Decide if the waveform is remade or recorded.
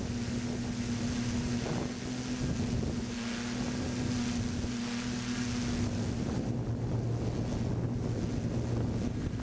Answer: recorded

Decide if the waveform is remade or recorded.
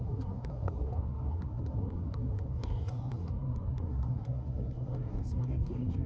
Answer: remade